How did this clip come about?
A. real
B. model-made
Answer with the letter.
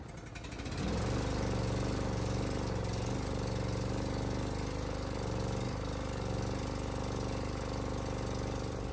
A